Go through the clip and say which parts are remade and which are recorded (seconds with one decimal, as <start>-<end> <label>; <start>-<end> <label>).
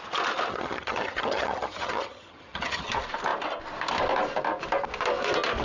0.0-0.5 recorded; 0.5-2.9 remade; 2.9-5.6 recorded